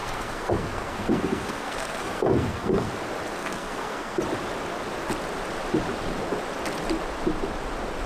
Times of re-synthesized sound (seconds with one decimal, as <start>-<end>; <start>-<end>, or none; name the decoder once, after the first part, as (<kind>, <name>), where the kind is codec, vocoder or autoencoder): 0.0-2.9 (codec, SNAC); 3.4-4.2